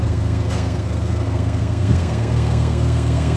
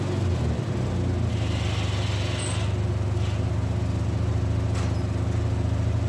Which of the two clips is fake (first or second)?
first